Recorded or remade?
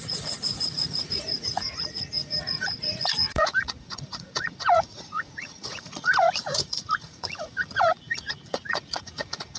remade